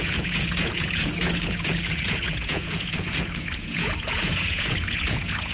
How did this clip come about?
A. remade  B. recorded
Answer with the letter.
A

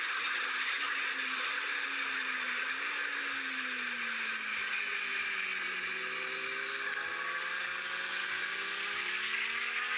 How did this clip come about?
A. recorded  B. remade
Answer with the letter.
A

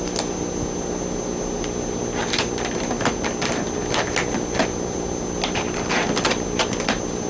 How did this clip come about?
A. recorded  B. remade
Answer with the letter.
A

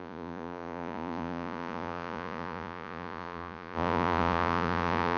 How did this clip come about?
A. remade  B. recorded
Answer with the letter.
A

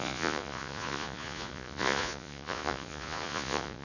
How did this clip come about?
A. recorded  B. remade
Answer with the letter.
B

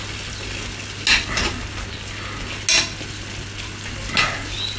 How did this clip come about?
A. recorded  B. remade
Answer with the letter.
A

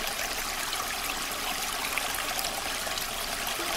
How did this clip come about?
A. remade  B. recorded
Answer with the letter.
B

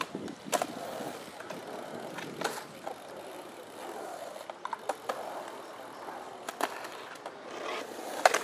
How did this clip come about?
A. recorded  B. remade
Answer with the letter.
A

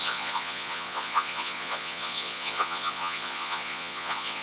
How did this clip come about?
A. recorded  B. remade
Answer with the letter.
B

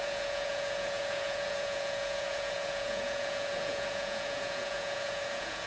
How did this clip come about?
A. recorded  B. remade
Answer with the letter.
B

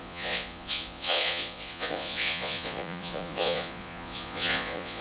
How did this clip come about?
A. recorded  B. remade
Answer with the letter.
B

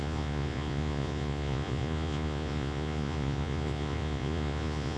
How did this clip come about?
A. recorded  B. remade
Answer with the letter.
B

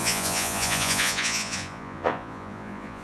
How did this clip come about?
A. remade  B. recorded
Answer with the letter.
A